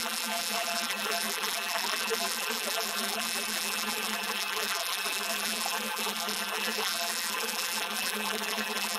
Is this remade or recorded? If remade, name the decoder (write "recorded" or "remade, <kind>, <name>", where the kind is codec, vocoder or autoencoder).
remade, vocoder, BigVGAN v2